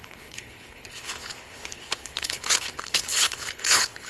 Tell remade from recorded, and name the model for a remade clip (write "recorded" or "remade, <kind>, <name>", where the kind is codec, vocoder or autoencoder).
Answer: remade, codec, HILCodec